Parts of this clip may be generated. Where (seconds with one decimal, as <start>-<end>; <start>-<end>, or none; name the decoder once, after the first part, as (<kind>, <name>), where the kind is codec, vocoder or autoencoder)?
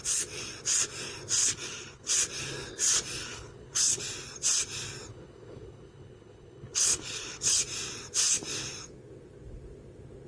1.4-2.1 (codec, HILCodec); 3.2-4.0; 5.1-7.6